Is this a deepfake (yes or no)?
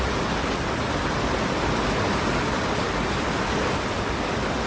no